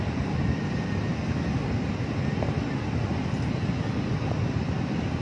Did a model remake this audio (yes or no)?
no